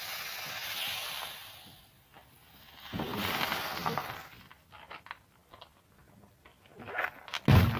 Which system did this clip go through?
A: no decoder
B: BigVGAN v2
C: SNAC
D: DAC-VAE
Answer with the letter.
A